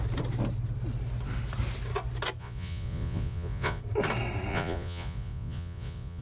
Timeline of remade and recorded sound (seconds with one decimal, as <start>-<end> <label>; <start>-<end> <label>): 0.0-2.4 recorded; 2.4-3.8 remade; 3.8-4.5 recorded; 4.5-6.2 remade